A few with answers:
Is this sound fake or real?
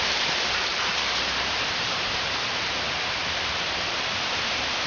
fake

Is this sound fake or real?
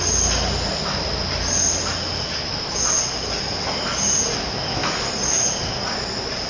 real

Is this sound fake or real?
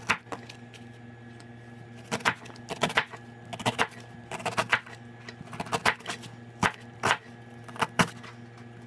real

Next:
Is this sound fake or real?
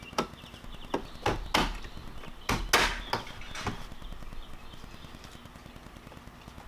real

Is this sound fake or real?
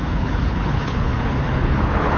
fake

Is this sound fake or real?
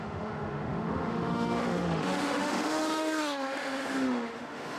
fake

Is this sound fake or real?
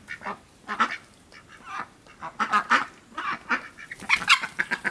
real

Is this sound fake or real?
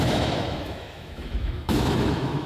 fake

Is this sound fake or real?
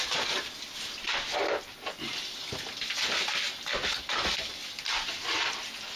real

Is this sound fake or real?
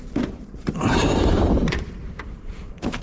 fake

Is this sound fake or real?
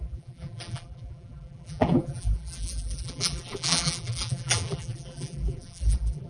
fake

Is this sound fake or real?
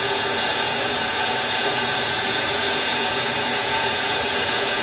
fake